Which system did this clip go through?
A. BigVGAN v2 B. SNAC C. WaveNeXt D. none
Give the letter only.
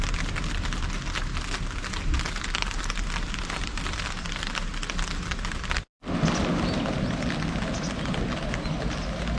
D